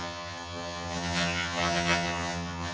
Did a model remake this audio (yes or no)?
yes